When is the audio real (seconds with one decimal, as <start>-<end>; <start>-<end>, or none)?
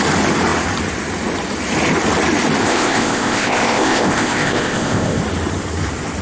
0.0-2.6; 5.2-6.2